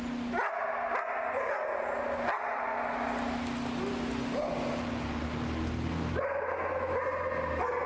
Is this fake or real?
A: real